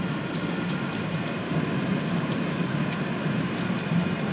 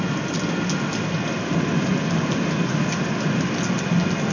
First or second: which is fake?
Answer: first